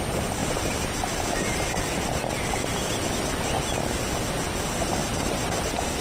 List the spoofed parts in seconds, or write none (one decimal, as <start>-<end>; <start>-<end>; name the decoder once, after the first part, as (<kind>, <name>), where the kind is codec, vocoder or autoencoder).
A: none